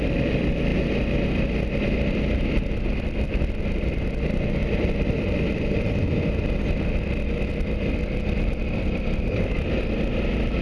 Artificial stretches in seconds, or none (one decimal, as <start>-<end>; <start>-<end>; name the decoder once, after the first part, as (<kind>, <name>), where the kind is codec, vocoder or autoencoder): 0.0-0.7 (vocoder, BigVGAN v2); 2.1-10.6